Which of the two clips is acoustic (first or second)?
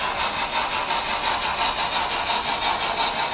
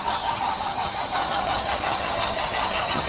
first